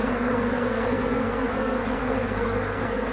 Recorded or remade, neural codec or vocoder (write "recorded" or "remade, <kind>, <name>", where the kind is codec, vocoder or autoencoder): remade, codec, SNAC